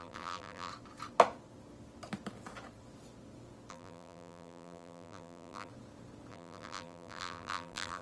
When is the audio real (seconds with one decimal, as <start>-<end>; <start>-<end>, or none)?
0.7-3.7; 5.7-6.3

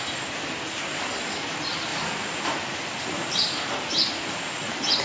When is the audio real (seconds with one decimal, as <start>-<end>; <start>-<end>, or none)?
0.0-5.0

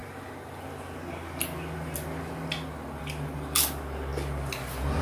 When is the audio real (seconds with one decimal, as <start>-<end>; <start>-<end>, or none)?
0.0-5.0